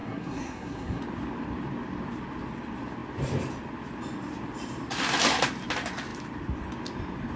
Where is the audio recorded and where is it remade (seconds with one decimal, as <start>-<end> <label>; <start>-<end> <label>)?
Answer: 0.0-1.0 remade; 1.0-7.4 recorded